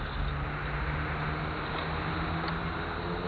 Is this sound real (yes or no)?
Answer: yes